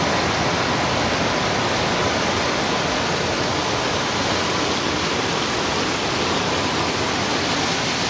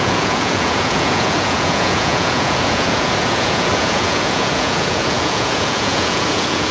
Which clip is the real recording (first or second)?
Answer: first